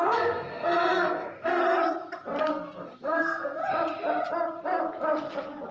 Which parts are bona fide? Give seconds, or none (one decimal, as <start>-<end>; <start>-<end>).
1.6-2.4; 3.6-5.7